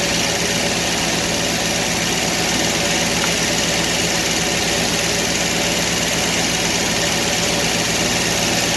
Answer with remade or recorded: recorded